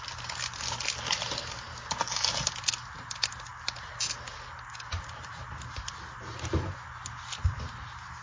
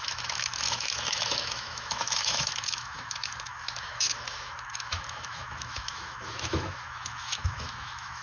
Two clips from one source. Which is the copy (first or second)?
second